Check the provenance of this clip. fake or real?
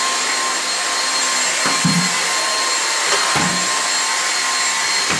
real